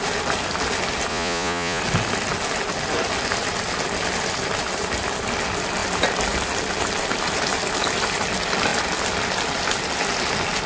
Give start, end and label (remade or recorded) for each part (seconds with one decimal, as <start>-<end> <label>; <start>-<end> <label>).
0.0-1.1 recorded; 1.1-1.8 remade; 1.8-10.7 recorded